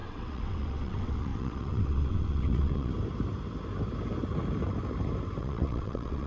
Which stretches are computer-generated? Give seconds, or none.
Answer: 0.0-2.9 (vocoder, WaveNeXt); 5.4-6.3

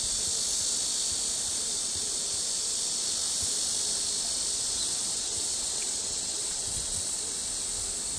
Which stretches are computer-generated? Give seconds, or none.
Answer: 5.1-7.2 (vocoder, WaveNeXt)

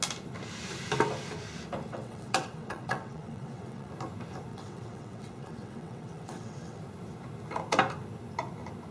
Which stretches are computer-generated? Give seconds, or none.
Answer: 1.9-3.9 (vocoder, WaveNeXt); 4.5-6.8

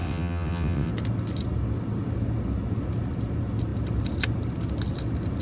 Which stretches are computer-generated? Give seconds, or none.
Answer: 0.0-0.9 (vocoder, WaveNeXt)

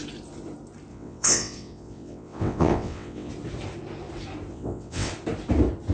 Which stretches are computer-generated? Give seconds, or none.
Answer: 0.9-3.3 (vocoder, WaveNeXt); 4.5-5.1

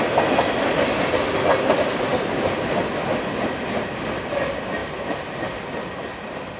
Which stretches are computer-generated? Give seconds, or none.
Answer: none